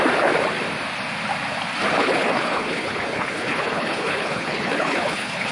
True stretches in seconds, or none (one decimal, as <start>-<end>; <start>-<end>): 0.0-2.0